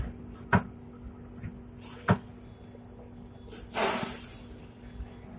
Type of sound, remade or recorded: recorded